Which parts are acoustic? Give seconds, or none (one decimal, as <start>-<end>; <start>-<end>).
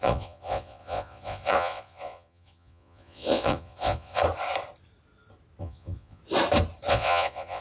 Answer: 4.2-5.6; 6.2-6.9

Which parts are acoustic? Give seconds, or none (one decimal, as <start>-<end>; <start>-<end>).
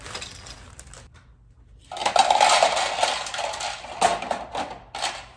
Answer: 0.0-5.4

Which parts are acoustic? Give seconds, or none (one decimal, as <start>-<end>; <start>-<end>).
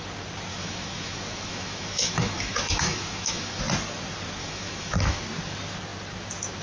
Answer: 0.0-0.5; 3.6-4.4; 5.2-6.6